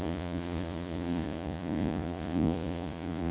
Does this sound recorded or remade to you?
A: remade